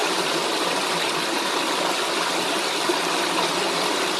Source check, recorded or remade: recorded